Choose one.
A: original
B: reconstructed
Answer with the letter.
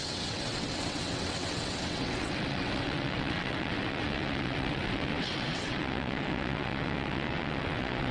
B